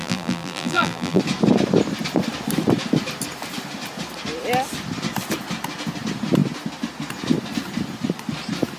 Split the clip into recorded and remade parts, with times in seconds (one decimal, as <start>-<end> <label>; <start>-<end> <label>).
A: 0.0-1.2 remade; 1.2-8.8 recorded